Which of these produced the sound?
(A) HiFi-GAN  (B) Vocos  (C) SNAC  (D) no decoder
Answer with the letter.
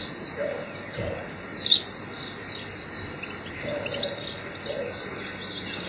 D